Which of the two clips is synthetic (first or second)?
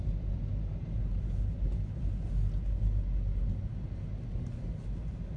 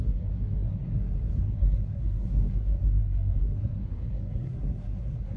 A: second